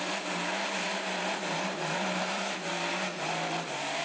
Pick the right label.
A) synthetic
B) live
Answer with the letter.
A